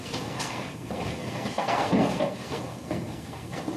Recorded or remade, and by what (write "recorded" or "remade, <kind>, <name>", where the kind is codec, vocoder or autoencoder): remade, codec, SNAC